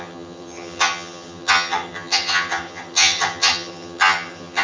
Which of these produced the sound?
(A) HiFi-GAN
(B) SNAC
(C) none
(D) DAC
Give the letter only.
A